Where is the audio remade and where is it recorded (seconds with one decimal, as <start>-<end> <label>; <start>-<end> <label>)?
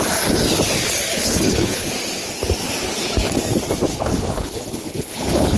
0.0-1.1 recorded; 1.1-1.9 remade; 1.9-3.9 recorded; 3.9-5.6 remade